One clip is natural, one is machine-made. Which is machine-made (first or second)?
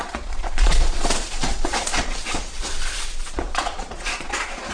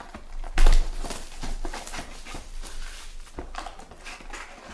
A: first